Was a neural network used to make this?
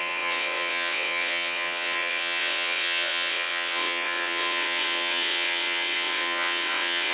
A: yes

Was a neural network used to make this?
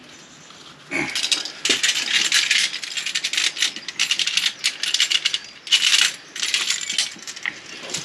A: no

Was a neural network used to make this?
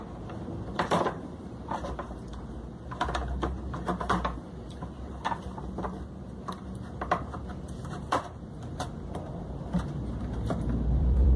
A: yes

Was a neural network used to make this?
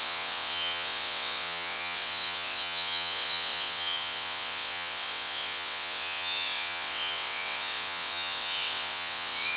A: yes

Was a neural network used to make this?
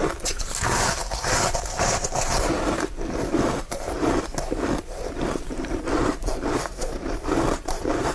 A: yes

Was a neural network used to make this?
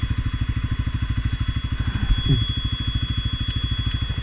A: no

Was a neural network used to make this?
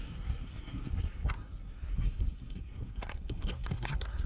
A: yes